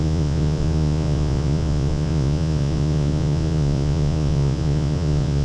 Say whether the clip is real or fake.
fake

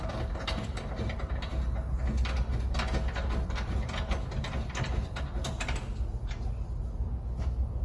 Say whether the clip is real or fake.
real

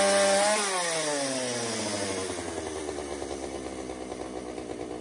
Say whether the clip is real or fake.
real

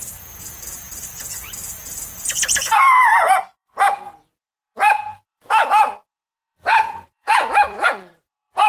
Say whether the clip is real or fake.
fake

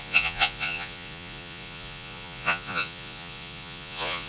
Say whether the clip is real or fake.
fake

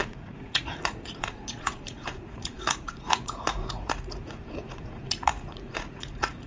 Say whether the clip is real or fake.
fake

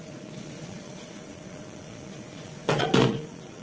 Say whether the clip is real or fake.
fake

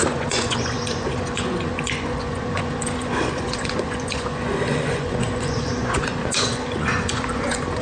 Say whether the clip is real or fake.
fake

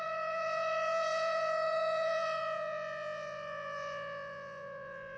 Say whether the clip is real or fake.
fake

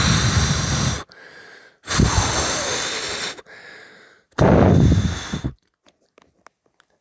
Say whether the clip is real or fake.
real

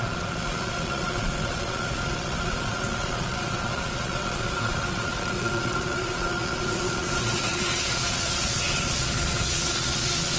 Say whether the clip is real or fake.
fake